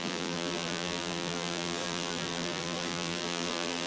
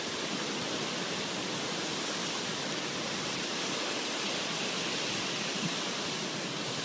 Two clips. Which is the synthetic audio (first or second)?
first